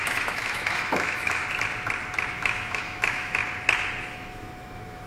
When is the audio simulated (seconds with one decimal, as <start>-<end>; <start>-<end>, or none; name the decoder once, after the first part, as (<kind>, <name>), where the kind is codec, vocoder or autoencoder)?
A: 0.0-1.4 (autoencoder, DAC-VAE); 2.3-3.4; 4.1-5.1